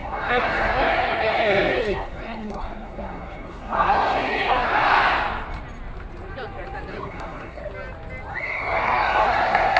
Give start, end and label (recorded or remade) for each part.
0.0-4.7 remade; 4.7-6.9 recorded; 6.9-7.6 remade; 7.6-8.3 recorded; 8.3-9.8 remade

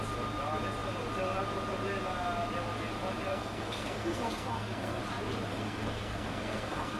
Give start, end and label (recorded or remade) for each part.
0.0-3.3 recorded; 3.3-5.0 remade; 5.0-5.5 recorded; 5.5-7.0 remade

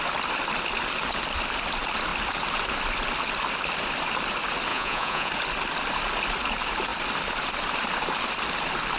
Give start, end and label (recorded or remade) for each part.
0.0-4.7 recorded; 4.7-5.3 remade; 5.3-9.0 recorded

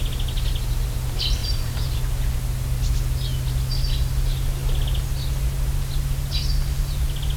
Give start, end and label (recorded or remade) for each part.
0.0-1.4 recorded; 1.4-2.0 remade; 2.0-7.4 recorded

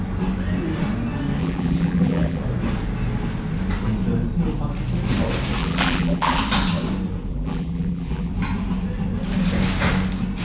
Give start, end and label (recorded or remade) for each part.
0.0-1.4 recorded; 1.4-2.4 remade; 2.4-5.6 recorded; 5.6-6.4 remade; 6.4-7.3 recorded; 7.3-8.3 remade; 8.3-10.4 recorded

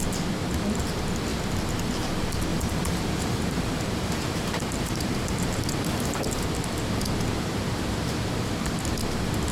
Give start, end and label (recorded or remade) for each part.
0.0-2.5 recorded; 2.5-6.2 remade; 6.2-9.5 recorded

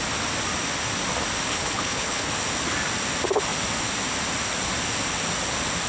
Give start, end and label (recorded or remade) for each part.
0.0-1.5 recorded; 1.5-2.3 remade; 2.3-5.9 recorded

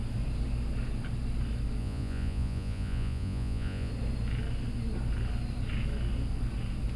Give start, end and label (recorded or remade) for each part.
0.0-1.8 recorded; 1.8-3.9 remade; 3.9-7.0 recorded